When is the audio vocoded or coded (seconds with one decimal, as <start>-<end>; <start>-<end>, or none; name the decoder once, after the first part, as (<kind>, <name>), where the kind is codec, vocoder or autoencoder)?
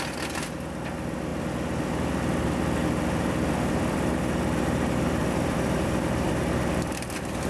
1.3-4.1 (vocoder, BigVGAN v2); 5.2-6.3